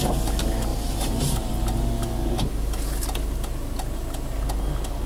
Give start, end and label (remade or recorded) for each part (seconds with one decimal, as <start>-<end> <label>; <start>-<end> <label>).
0.0-0.7 recorded; 0.7-1.5 remade; 1.5-5.1 recorded